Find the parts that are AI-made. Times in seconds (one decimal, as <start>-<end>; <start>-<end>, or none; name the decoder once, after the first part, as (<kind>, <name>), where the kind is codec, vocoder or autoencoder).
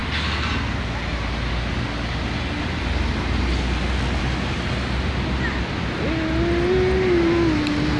none